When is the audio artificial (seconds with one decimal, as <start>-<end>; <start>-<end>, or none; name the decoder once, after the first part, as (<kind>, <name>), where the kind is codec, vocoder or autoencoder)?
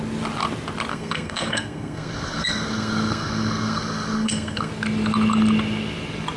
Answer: 0.9-4.7 (codec, SNAC)